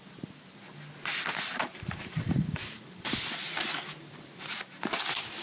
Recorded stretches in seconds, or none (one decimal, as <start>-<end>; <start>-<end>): 0.0-1.6; 4.8-5.4